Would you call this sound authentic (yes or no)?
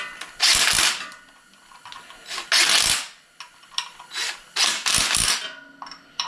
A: yes